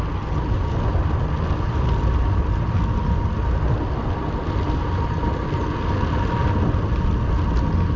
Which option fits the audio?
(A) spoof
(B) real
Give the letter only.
B